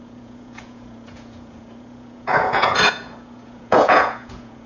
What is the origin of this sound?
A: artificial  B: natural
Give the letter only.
A